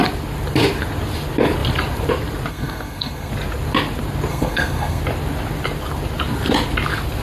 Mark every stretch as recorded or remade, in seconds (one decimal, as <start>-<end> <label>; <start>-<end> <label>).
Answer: 0.0-2.5 recorded; 2.5-3.3 remade; 3.3-4.3 recorded; 4.3-5.0 remade; 5.0-7.2 recorded